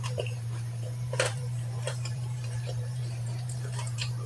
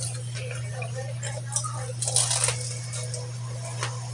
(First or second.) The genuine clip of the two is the second